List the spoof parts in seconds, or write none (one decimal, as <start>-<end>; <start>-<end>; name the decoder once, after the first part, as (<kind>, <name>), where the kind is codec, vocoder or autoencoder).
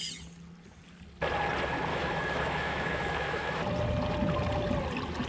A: 1.9-3.6 (autoencoder, DAC-VAE)